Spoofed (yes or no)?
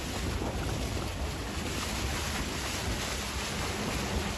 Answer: no